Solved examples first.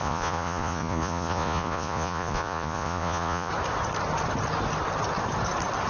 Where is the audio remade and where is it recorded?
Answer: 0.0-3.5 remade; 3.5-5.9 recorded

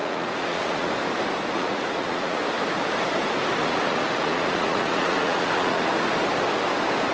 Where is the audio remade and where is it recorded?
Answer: 0.0-0.9 remade; 0.9-1.5 recorded; 1.5-2.4 remade; 2.4-3.6 recorded; 3.6-5.9 remade; 5.9-7.1 recorded

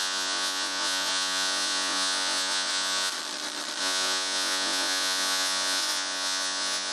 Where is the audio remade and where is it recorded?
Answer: 0.0-3.1 remade; 3.1-3.8 recorded; 3.8-6.9 remade

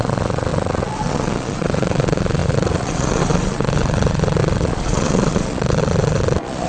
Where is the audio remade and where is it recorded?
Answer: 0.0-6.7 remade